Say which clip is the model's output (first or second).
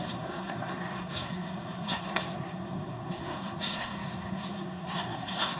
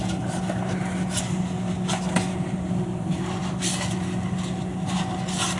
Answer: first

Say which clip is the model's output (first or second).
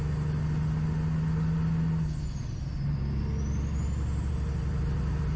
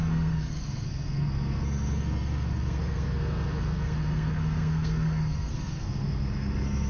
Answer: second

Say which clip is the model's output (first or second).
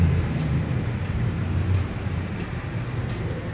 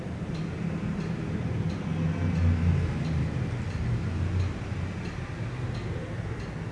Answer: first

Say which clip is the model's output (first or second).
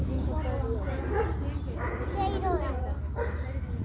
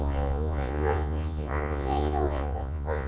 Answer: second